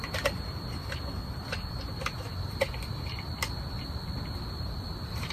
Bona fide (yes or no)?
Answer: no